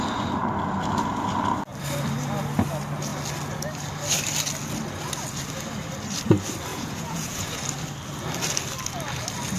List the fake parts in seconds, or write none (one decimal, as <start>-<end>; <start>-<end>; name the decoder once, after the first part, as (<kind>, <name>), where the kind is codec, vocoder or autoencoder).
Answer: 6.7-7.6 (vocoder, Vocos)